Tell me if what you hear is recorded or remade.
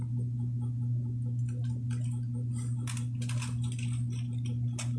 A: recorded